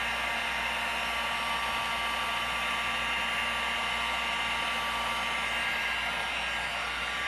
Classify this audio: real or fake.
real